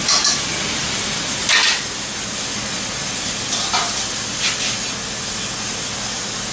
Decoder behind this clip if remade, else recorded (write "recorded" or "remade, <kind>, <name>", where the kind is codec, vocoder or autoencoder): recorded